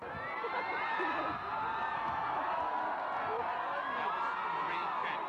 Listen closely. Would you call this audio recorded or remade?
recorded